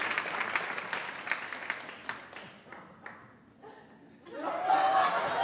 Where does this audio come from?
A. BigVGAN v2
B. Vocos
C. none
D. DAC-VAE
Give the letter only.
C